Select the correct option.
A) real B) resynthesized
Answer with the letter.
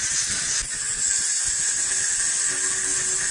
A